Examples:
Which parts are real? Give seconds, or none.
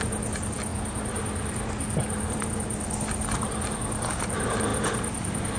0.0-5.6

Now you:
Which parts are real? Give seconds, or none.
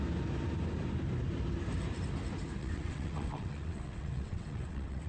0.0-2.6